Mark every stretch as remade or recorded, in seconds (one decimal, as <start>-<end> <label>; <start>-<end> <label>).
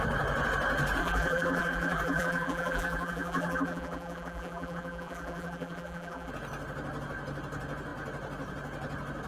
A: 0.0-1.0 recorded; 1.0-6.3 remade; 6.3-9.3 recorded